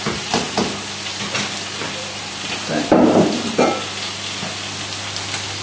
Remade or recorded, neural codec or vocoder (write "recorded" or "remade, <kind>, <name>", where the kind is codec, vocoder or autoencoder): recorded